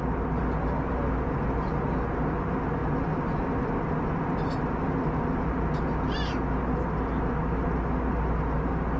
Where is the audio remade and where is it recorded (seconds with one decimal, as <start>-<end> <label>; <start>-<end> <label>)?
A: 0.0-9.0 recorded